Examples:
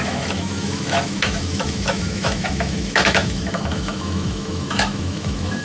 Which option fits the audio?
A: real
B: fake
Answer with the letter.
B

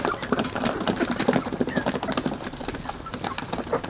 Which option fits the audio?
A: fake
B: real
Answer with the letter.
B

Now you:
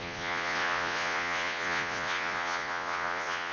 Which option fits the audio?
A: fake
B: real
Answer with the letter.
A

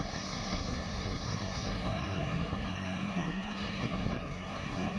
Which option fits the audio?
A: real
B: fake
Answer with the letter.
B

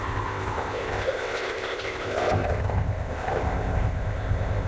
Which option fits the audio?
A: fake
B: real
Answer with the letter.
A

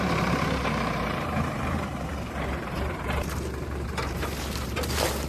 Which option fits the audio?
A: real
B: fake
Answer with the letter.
B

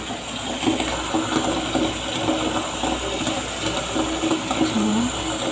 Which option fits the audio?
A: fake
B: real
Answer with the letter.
B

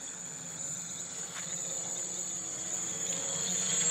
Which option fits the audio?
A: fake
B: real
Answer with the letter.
B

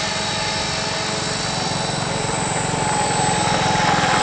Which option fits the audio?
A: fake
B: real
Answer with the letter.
B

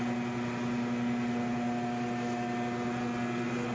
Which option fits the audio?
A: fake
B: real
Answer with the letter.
B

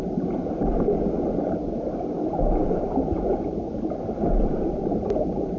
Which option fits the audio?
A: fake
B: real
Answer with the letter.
B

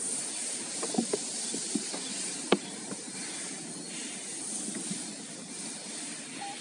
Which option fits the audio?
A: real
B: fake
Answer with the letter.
A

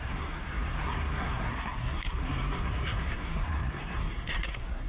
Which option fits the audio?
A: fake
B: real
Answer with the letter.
A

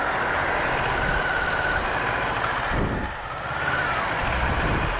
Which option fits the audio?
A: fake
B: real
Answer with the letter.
B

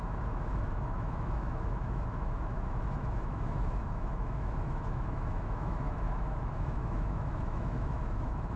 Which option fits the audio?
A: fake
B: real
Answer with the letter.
A